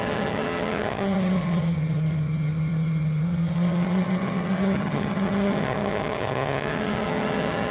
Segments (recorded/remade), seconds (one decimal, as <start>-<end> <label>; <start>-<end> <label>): 0.0-7.7 remade